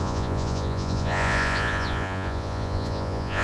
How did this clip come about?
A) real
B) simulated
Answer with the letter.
B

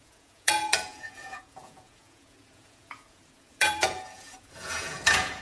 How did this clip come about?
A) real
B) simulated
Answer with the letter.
B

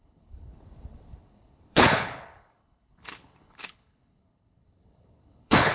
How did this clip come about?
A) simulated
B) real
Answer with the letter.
A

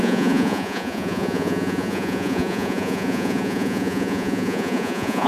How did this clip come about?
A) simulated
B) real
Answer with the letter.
A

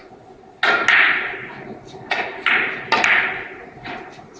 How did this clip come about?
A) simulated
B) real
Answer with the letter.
B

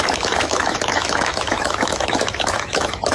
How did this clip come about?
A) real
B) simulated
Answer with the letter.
B